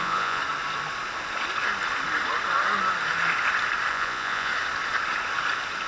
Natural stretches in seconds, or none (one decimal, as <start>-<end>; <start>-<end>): 0.4-3.9; 4.5-5.9